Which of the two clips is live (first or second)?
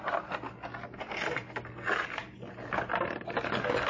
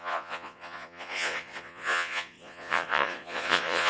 first